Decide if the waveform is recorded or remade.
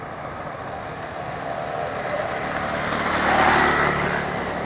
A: recorded